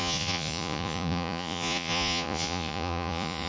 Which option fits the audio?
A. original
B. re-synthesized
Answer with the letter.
B